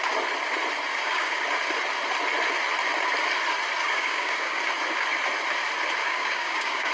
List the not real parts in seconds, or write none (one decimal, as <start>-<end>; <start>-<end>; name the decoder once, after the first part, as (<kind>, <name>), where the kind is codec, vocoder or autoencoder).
0.9-1.4 (codec, DAC); 3.8-4.6; 6.0-6.9